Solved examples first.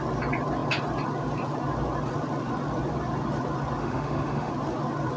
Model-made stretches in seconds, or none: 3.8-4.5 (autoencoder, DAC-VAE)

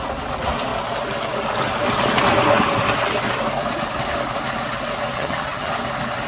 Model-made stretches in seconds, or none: 5.1-5.7 (vocoder, HiFi-GAN)

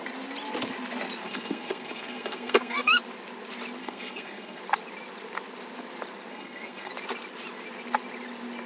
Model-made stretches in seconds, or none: 1.2-2.9 (codec, SNAC); 3.8-4.6; 6.3-6.9

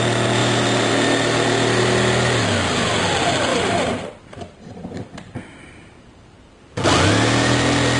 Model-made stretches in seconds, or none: 0.4-0.9 (vocoder, BigVGAN v2); 3.5-6.8

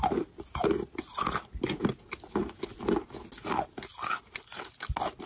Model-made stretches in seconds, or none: none